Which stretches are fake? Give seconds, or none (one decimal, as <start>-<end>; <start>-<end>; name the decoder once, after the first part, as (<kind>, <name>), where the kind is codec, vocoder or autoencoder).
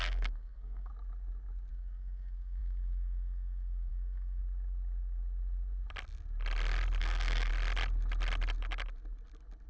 0.0-0.9 (codec, SNAC); 1.7-4.4; 7.0-7.5